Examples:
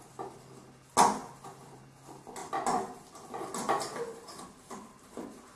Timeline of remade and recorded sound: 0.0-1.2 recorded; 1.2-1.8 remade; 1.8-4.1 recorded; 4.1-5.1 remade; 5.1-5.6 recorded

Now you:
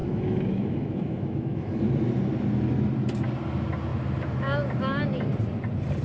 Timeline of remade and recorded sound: 0.0-1.8 remade; 1.8-6.0 recorded

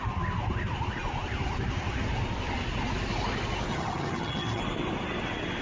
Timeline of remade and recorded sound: 0.0-3.7 recorded; 3.7-4.6 remade; 4.6-5.6 recorded

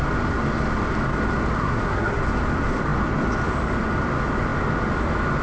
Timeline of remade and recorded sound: 0.0-1.6 recorded; 1.6-2.2 remade; 2.2-5.4 recorded

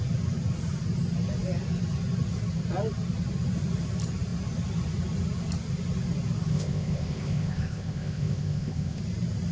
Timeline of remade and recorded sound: 0.0-6.5 recorded; 6.5-9.0 remade; 9.0-9.5 recorded

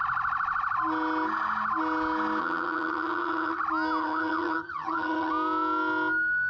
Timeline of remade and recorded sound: 0.0-2.4 recorded; 2.4-3.6 remade; 3.6-4.0 recorded; 4.0-5.3 remade; 5.3-6.5 recorded

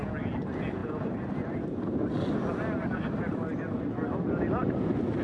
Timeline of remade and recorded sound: 0.0-5.2 recorded

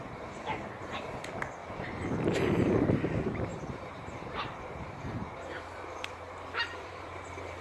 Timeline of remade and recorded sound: 0.0-1.6 recorded; 1.6-3.0 remade; 3.0-3.5 recorded; 3.5-7.6 remade